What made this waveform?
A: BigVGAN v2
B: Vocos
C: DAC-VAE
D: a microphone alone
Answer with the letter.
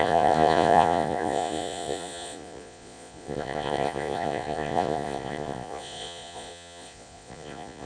B